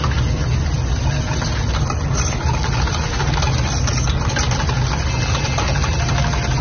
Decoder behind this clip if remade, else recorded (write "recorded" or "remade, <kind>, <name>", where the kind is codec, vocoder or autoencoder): recorded